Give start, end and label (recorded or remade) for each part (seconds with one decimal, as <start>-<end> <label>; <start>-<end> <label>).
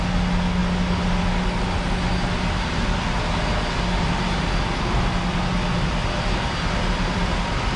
0.0-7.8 recorded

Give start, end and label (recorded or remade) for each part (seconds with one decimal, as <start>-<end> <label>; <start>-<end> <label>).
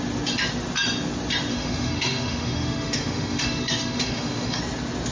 0.0-1.5 recorded; 1.5-4.6 remade; 4.6-5.1 recorded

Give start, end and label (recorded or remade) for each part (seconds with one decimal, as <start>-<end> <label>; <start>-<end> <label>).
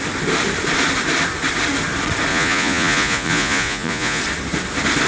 0.0-2.3 recorded; 2.3-4.2 remade; 4.2-5.1 recorded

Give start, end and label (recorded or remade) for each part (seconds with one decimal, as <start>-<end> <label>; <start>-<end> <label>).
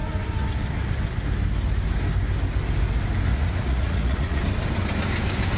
0.0-3.3 recorded; 3.3-4.4 remade; 4.4-5.6 recorded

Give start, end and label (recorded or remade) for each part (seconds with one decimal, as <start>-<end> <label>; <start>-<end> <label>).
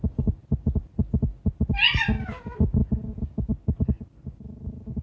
0.0-2.8 recorded; 2.8-3.5 remade; 3.5-5.0 recorded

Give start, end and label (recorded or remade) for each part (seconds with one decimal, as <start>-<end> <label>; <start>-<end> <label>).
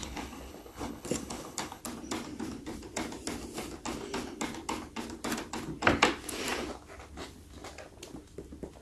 0.0-1.8 remade; 1.8-8.8 recorded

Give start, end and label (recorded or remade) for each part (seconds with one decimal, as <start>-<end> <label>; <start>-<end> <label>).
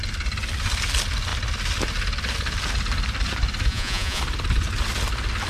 0.0-3.7 recorded; 3.7-4.2 remade; 4.2-5.5 recorded